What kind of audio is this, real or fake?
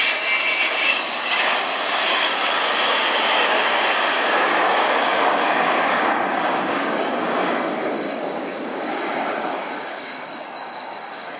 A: fake